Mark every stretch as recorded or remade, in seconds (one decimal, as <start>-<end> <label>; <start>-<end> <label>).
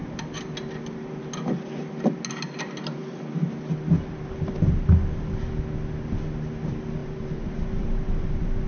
0.0-7.0 recorded; 7.0-7.5 remade; 7.5-8.7 recorded